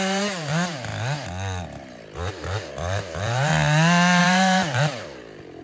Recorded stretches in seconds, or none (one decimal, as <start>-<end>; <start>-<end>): 0.9-2.3; 3.5-4.2